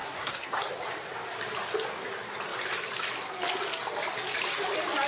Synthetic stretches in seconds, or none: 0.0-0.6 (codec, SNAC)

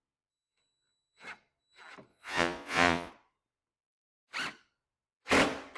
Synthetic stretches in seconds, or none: 2.1-3.1 (vocoder, Vocos)

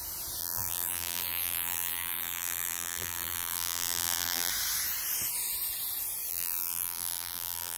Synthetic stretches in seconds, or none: 0.4-4.5 (vocoder, BigVGAN v2); 6.3-7.8

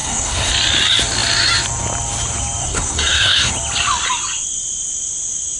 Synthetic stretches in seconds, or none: 0.0-0.5 (codec, SNAC); 2.6-3.5